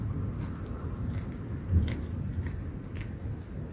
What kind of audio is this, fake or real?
real